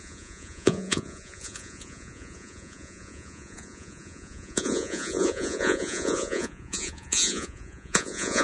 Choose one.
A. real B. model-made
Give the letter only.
B